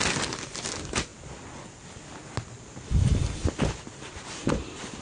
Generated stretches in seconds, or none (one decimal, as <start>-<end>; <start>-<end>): none